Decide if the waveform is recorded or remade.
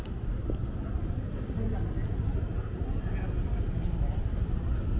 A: recorded